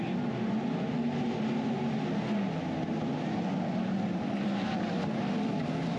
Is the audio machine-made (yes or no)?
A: no